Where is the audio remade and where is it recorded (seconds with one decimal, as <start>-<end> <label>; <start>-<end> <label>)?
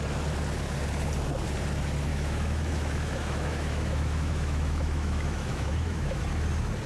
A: 0.0-2.1 recorded; 2.1-6.2 remade; 6.2-6.9 recorded